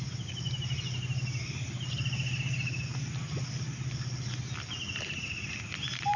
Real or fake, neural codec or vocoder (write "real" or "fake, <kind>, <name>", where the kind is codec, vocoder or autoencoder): real